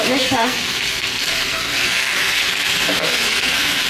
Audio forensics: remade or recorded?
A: remade